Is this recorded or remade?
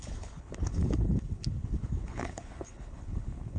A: remade